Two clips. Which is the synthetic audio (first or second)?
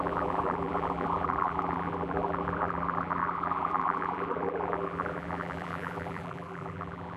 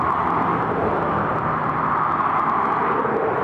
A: first